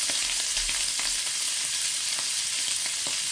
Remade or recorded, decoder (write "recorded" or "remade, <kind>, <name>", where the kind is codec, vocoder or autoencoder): recorded